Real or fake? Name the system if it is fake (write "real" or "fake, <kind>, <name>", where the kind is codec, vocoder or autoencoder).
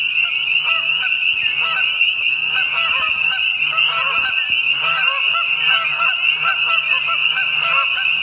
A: real